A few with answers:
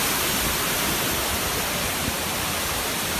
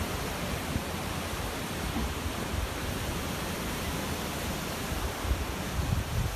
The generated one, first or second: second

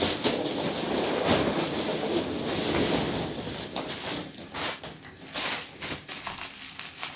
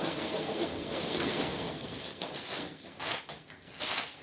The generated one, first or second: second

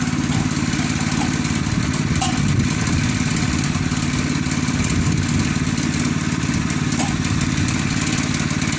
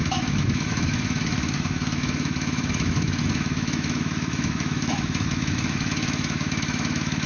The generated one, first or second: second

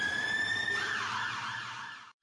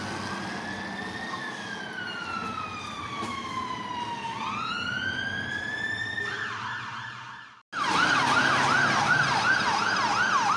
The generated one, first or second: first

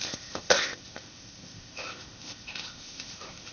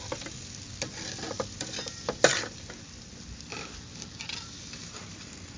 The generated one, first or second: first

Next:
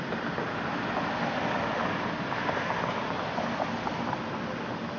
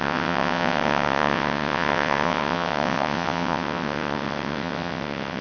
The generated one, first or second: second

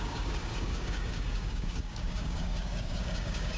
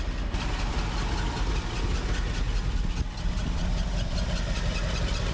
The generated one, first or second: first